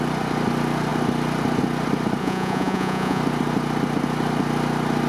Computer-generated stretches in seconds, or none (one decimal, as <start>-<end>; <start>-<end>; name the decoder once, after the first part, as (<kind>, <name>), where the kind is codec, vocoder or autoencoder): 2.2-3.2 (vocoder, Vocos)